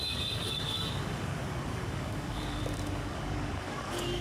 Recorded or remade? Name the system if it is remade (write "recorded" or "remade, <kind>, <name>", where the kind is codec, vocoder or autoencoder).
remade, codec, DAC